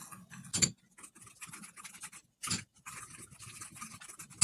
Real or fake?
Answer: real